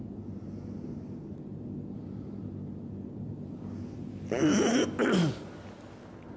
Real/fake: real